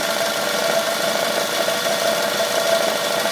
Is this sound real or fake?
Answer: real